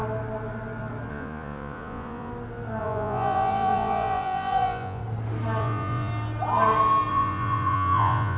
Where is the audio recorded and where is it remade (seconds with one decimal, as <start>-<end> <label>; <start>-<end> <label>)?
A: 0.0-1.1 recorded; 1.1-2.3 remade; 2.3-2.8 recorded; 2.8-5.0 remade; 5.0-5.6 recorded; 5.6-6.1 remade; 6.1-7.1 recorded; 7.1-8.4 remade